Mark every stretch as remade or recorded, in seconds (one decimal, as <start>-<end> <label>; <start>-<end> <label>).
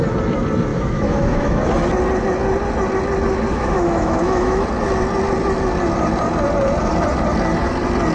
0.0-0.7 recorded; 0.7-1.6 remade; 1.6-3.5 recorded; 3.5-4.6 remade; 4.6-8.1 recorded